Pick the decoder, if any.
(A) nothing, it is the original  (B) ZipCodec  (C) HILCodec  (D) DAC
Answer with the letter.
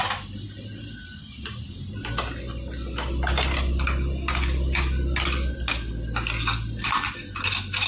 A